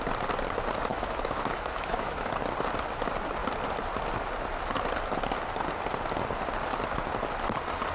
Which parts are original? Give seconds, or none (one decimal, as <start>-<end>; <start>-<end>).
0.0-0.9; 2.3-7.9